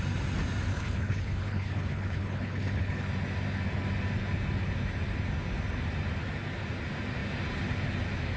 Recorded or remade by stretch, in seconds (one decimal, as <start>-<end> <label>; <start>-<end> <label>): 0.0-0.7 recorded; 0.7-3.0 remade; 3.0-8.4 recorded